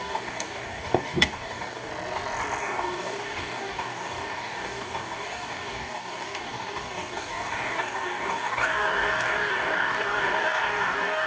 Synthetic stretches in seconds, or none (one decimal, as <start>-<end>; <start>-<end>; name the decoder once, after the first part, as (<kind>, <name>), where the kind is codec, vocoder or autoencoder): 0.0-1.9 (codec, DAC); 2.6-11.3